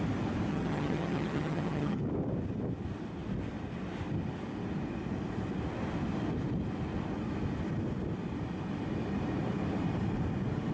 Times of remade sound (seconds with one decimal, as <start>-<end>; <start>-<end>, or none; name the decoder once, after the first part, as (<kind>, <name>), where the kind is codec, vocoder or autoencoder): 0.5-2.0 (vocoder, HiFi-GAN)